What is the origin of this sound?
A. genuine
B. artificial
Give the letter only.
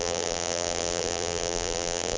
B